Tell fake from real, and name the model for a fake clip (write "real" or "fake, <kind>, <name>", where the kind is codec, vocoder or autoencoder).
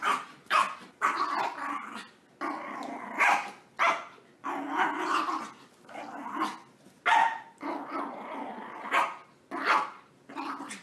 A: real